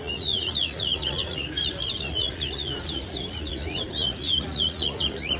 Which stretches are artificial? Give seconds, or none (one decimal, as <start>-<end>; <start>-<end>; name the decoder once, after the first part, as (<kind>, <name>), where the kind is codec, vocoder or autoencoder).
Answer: 0.0-5.4 (vocoder, Vocos)